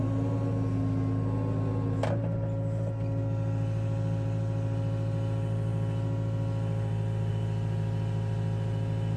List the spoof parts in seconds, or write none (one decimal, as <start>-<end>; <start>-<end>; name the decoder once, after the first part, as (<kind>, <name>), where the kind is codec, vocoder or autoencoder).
none